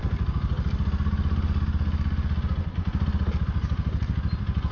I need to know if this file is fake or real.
real